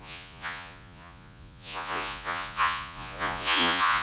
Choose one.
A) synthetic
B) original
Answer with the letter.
A